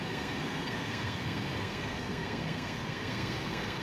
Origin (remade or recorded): remade